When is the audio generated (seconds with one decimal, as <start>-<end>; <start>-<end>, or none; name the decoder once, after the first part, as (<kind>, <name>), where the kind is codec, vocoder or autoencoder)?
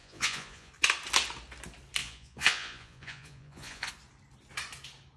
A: 0.0-0.7 (vocoder, Vocos); 2.0-3.9